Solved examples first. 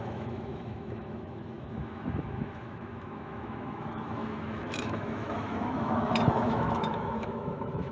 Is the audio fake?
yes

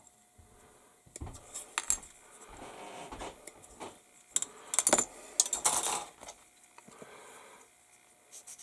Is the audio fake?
no